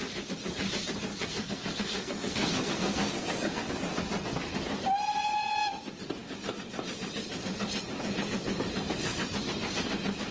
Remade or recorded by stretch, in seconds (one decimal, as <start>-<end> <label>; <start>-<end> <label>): 0.0-1.1 recorded; 1.1-3.7 remade; 3.7-10.3 recorded